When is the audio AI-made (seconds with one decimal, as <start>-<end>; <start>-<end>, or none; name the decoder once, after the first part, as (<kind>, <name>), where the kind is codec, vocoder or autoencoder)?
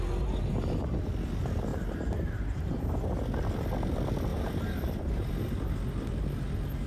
0.5-1.1 (vocoder, BigVGAN v2); 1.7-2.9; 4.3-5.3